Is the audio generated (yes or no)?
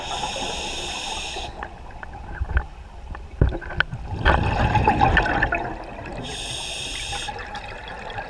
no